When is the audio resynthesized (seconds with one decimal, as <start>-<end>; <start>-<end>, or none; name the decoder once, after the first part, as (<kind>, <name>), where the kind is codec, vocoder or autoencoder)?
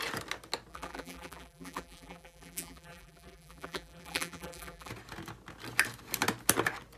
0.7-4.9 (vocoder, BigVGAN v2)